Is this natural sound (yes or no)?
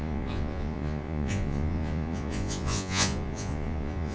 no